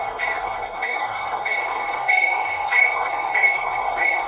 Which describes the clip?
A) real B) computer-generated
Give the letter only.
B